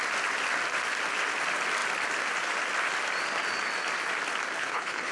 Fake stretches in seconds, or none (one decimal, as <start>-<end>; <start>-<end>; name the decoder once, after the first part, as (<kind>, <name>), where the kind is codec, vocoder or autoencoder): 4.6-5.1 (codec, HILCodec)